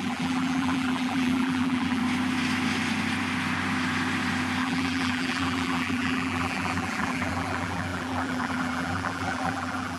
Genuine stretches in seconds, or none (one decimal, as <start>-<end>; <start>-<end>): 2.0-4.6